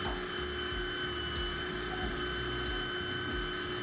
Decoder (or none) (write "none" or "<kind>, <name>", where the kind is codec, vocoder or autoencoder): none